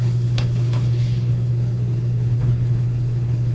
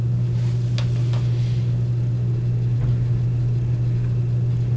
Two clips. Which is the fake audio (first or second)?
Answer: first